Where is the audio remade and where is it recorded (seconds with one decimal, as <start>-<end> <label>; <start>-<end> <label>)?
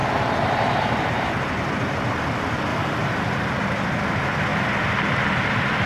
0.0-2.7 recorded; 2.7-3.5 remade; 3.5-5.9 recorded